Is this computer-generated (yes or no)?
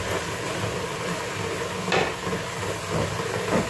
no